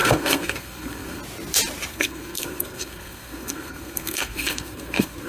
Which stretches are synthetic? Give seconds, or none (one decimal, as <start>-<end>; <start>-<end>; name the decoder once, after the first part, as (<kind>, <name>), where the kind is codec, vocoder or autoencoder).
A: 0.0-1.2 (codec, SNAC); 1.9-5.3